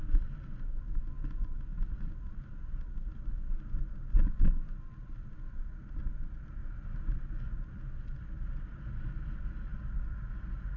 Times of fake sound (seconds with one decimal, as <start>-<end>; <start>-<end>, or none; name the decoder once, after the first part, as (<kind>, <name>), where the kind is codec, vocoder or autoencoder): 6.6-7.2 (vocoder, BigVGAN v2)